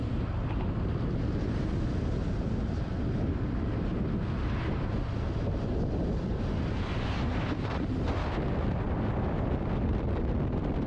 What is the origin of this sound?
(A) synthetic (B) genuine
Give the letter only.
B